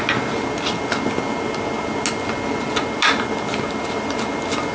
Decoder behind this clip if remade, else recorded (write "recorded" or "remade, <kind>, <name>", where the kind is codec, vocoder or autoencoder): recorded